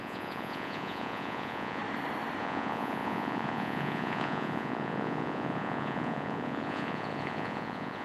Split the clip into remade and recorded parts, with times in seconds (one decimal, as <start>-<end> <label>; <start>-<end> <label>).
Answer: 0.0-1.8 remade; 1.8-2.4 recorded; 2.4-8.0 remade